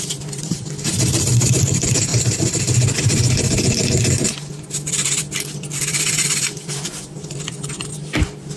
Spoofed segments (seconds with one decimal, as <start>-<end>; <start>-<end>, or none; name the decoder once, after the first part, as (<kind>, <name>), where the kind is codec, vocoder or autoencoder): 0.0-2.1 (vocoder, BigVGAN v2); 4.9-8.6